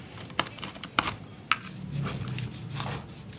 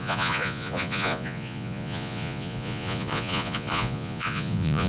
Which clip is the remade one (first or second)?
second